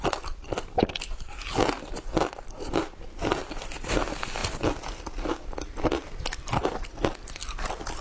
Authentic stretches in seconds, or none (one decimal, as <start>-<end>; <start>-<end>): 0.0-8.0